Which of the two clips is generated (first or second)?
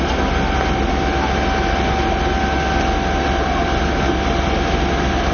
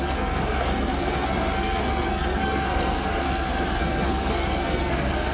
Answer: second